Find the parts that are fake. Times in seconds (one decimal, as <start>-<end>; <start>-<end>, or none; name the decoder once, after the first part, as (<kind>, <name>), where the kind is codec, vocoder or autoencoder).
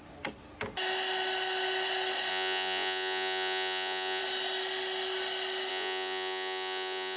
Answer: 2.3-4.2 (vocoder, Vocos); 5.7-7.2